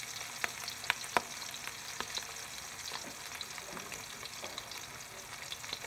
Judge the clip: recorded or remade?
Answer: recorded